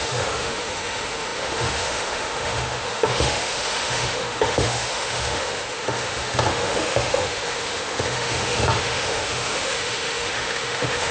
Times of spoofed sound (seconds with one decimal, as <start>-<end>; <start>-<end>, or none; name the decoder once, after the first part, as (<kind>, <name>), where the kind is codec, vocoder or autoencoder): 0.0-11.1 (autoencoder, DAC-VAE)